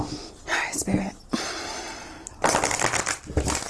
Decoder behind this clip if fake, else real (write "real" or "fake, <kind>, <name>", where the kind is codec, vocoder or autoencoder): real